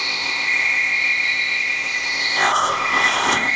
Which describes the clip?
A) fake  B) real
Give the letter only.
A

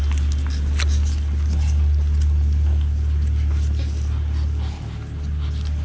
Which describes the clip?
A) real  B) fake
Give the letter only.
A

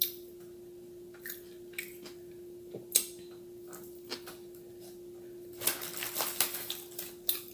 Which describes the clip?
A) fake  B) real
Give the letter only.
B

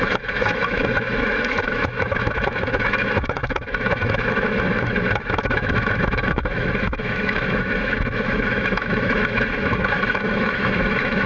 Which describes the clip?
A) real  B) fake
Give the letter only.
B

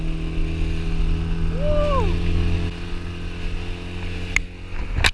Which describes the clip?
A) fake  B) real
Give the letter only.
B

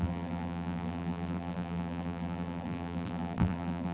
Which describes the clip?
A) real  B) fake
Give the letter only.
B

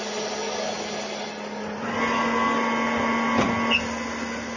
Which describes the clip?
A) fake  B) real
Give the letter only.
B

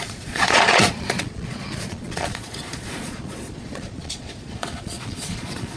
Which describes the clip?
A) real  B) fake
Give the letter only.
B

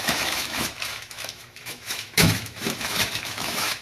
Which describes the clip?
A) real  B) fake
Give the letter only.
B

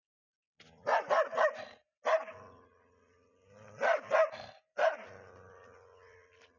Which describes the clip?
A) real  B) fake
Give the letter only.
A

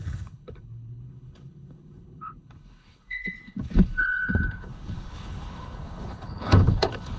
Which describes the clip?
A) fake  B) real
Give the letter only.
A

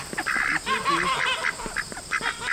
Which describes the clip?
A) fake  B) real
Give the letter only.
B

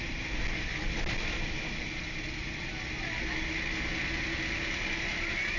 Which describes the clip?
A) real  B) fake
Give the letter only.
A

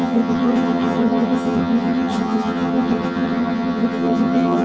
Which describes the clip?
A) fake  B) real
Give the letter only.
A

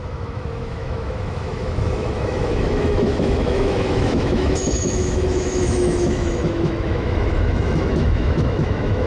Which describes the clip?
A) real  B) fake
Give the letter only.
B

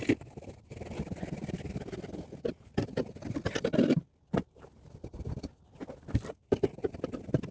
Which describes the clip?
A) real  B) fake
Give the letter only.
A